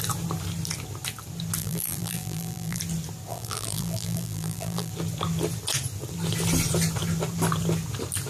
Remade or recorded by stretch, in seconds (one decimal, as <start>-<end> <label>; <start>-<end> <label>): 0.0-1.6 recorded; 1.6-2.8 remade; 2.8-3.3 recorded; 3.3-4.9 remade; 4.9-8.3 recorded